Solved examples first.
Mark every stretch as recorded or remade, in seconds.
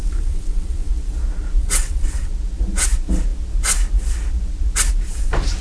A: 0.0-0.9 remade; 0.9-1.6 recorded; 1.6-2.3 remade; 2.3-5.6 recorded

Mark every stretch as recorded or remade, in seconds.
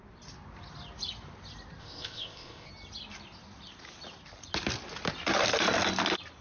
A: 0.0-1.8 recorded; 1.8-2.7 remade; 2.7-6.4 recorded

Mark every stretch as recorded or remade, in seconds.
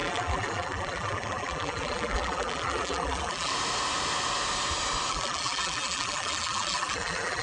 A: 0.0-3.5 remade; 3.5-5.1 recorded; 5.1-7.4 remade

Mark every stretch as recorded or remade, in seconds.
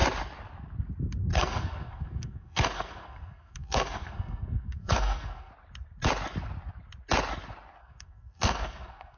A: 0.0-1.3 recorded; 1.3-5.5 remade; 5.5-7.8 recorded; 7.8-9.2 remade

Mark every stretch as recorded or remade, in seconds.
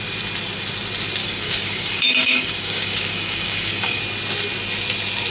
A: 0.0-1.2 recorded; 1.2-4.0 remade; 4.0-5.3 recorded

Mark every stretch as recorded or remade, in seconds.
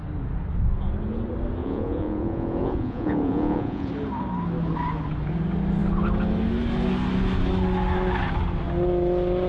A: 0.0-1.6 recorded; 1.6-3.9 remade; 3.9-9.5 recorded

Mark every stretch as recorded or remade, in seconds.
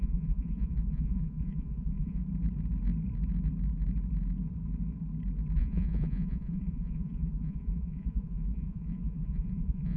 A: 0.0-2.2 remade; 2.2-5.6 recorded; 5.6-10.0 remade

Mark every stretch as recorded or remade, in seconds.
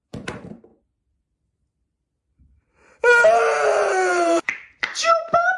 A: 0.0-0.7 remade; 0.7-4.1 recorded; 4.1-5.6 remade